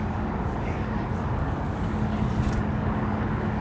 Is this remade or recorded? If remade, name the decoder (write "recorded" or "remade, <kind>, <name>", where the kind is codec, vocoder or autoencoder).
remade, codec, DAC